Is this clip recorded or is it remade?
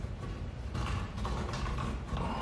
recorded